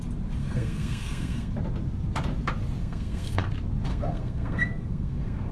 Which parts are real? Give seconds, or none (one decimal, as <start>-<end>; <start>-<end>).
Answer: 0.0-0.4; 1.5-2.8; 3.5-3.9